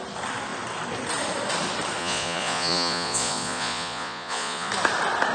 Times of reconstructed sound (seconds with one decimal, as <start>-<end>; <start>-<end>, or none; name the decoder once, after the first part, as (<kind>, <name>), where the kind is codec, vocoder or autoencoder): 2.0-4.7 (vocoder, Vocos)